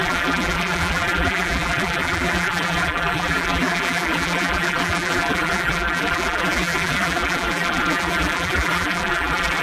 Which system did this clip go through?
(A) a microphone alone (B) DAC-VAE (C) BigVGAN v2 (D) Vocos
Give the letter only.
C